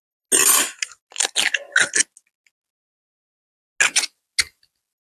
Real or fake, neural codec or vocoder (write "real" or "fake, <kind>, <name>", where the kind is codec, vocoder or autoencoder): real